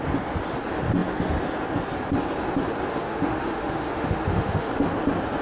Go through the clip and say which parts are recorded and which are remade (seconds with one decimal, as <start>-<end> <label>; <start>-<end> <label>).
0.0-2.9 recorded; 2.9-4.7 remade; 4.7-5.4 recorded